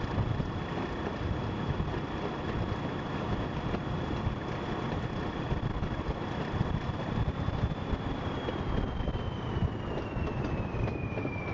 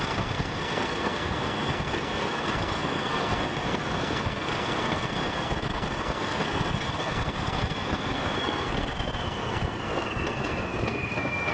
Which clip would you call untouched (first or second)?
first